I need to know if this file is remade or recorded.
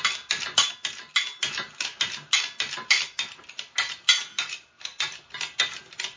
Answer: recorded